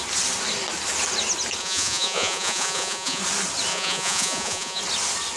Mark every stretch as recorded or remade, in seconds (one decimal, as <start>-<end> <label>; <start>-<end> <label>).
0.0-1.6 recorded; 1.6-3.2 remade; 3.2-3.7 recorded; 3.7-4.8 remade; 4.8-5.4 recorded